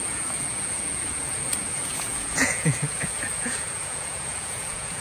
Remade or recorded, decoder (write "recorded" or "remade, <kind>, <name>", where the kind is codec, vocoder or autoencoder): remade, vocoder, Vocos